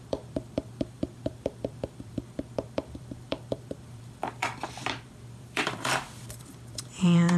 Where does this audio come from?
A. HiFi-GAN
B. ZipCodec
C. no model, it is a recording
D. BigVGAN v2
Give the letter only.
D